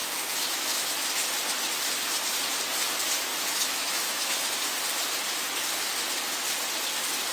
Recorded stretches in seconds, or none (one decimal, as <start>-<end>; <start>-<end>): 1.0-3.3; 4.4-7.3